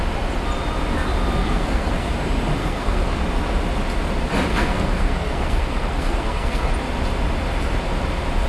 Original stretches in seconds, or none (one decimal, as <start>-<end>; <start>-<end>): 0.0-1.4; 2.1-2.6; 3.2-4.5; 6.7-8.5